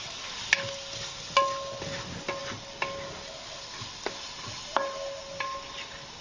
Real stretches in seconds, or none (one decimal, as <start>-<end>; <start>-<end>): 0.0-6.2